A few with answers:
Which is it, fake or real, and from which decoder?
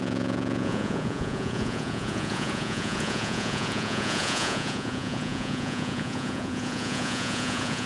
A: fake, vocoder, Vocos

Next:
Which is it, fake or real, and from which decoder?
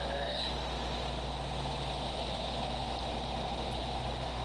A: real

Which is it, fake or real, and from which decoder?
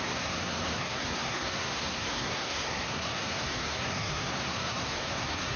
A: fake, codec, SNAC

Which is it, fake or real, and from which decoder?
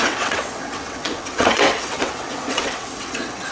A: fake, vocoder, WaveNeXt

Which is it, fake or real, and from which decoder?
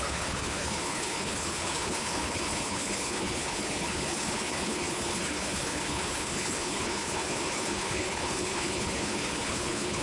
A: fake, codec, HILCodec